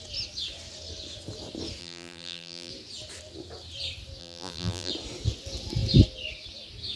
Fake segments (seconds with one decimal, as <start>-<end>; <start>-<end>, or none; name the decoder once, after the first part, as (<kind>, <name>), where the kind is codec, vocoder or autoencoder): 1.8-2.7 (vocoder, BigVGAN v2); 4.2-4.9